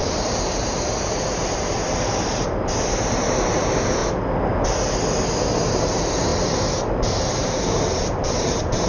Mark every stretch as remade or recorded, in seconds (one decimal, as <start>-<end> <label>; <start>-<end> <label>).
0.0-4.0 remade; 4.0-5.7 recorded; 5.7-6.3 remade; 6.3-7.3 recorded; 7.3-8.9 remade

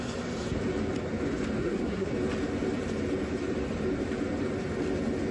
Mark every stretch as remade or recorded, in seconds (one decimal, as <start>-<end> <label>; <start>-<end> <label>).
0.0-1.6 recorded; 1.6-2.1 remade; 2.1-5.3 recorded

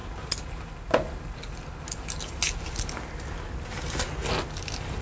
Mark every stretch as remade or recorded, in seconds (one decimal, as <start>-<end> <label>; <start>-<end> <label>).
0.0-5.0 recorded

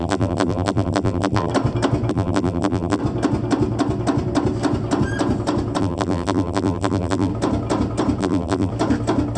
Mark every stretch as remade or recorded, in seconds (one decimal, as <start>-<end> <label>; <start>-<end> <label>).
0.0-1.5 remade; 1.5-2.1 recorded; 2.1-3.0 remade; 3.0-5.8 recorded; 5.8-7.3 remade; 7.3-8.2 recorded; 8.2-8.7 remade; 8.7-9.4 recorded

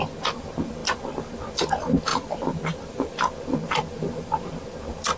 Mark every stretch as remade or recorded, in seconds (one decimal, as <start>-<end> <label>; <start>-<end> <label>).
0.0-2.1 recorded; 2.1-3.2 remade; 3.2-5.2 recorded

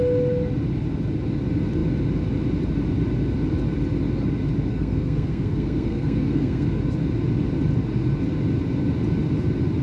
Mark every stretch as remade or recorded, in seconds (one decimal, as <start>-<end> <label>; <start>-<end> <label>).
0.0-4.7 recorded; 4.7-6.8 remade; 6.8-9.8 recorded